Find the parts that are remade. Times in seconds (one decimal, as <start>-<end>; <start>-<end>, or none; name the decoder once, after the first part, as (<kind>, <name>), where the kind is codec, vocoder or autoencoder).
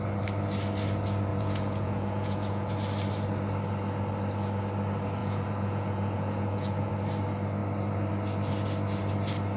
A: 1.3-2.7 (vocoder, Vocos); 5.2-6.9